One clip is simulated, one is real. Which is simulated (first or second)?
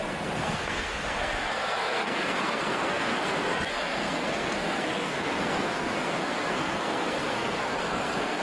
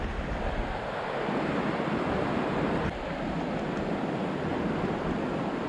first